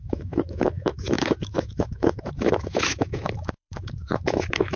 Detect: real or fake fake